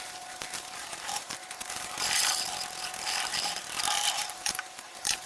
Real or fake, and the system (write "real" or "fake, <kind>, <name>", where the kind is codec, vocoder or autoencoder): fake, vocoder, BigVGAN v2